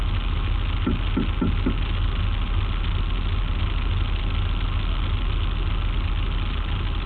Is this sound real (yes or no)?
yes